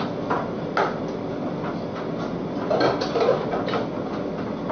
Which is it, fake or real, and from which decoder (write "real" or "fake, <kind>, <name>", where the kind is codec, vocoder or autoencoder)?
real